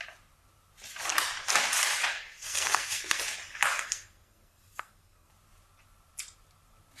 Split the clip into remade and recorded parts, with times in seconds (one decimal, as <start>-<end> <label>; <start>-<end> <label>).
0.0-2.1 recorded; 2.1-3.2 remade; 3.2-3.7 recorded; 3.7-5.3 remade; 5.3-7.0 recorded